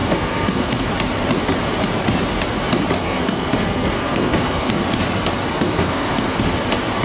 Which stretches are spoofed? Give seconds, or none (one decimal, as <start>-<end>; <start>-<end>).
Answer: 0.0-0.9; 3.0-4.7; 5.5-6.4